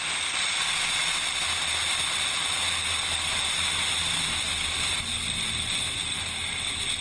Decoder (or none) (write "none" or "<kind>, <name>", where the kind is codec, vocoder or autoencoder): none